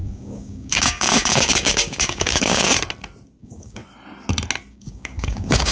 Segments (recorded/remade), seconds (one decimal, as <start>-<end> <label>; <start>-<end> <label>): 0.0-2.7 remade; 2.7-3.4 recorded; 3.4-3.8 remade; 3.8-4.7 recorded; 4.7-5.7 remade